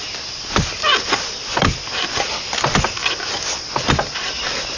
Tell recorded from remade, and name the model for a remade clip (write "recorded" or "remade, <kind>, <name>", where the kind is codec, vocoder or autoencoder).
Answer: recorded